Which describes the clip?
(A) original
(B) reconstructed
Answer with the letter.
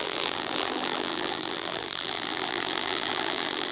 B